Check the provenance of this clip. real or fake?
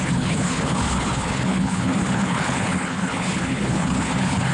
fake